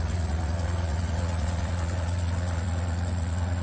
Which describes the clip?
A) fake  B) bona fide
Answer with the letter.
A